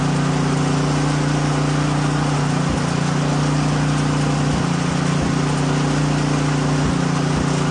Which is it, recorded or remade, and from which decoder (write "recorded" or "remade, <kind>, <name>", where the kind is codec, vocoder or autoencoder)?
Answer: recorded